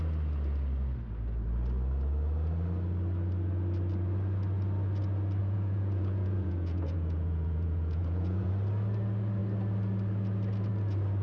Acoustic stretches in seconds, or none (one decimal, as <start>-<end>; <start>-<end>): 0.0-5.4; 8.5-11.2